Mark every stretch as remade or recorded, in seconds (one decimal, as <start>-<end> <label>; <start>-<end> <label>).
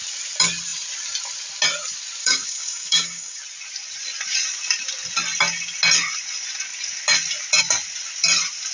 0.0-2.2 recorded; 2.2-3.4 remade; 3.4-8.7 recorded